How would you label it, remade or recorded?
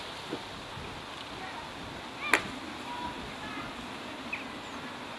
recorded